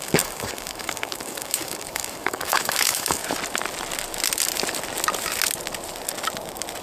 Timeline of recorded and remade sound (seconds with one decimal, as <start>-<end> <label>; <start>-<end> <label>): 0.0-3.2 remade; 3.2-6.8 recorded